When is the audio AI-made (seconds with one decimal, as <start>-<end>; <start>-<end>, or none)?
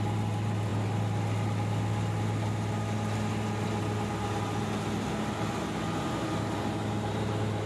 none